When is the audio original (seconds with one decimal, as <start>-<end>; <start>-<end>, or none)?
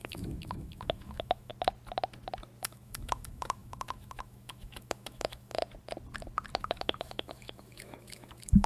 1.5-2.6; 5.6-6.6